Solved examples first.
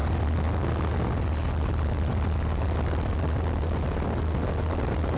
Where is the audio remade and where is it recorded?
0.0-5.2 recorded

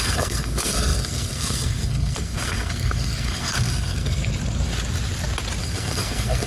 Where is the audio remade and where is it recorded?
0.0-4.3 remade; 4.3-5.6 recorded; 5.6-6.5 remade

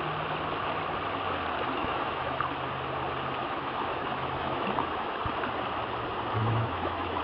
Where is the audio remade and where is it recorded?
0.0-1.8 recorded; 1.8-2.4 remade; 2.4-3.4 recorded; 3.4-5.2 remade; 5.2-6.4 recorded; 6.4-7.2 remade

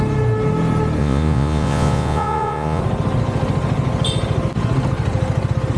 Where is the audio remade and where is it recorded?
0.0-1.0 recorded; 1.0-2.8 remade; 2.8-5.8 recorded